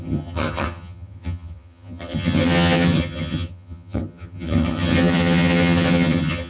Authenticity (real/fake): fake